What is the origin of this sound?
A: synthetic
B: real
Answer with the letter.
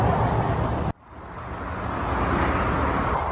B